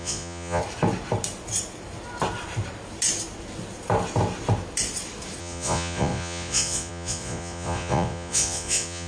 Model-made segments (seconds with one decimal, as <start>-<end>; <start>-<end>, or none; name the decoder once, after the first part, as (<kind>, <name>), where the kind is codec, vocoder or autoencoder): 0.0-0.6 (vocoder, Vocos); 5.4-9.1